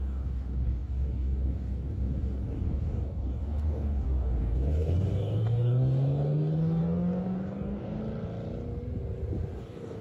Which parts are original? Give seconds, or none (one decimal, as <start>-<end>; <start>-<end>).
8.0-9.6